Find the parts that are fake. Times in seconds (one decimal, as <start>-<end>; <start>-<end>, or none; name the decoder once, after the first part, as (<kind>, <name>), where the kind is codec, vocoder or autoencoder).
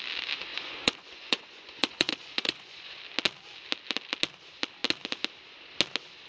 0.5-3.0 (vocoder, Vocos)